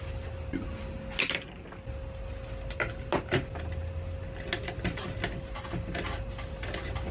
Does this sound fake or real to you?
real